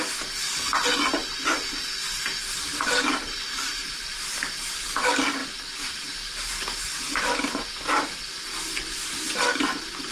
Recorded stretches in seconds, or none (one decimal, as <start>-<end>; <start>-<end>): 0.0-2.7; 4.9-10.1